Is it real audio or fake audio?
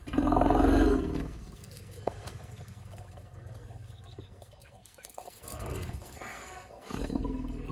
fake